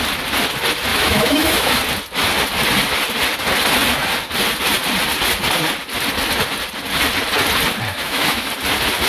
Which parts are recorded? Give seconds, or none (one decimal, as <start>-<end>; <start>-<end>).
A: 0.0-0.9; 1.8-7.9; 8.5-9.1